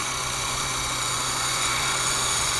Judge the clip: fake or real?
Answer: fake